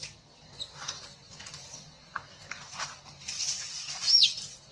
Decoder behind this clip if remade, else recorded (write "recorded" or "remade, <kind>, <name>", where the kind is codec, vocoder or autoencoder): recorded